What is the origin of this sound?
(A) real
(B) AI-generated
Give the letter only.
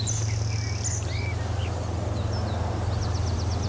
A